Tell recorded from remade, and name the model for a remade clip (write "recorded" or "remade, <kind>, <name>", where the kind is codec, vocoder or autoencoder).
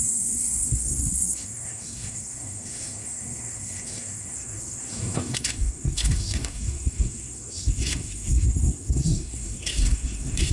remade, codec, SNAC